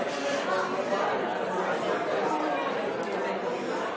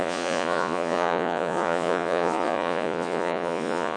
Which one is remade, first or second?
second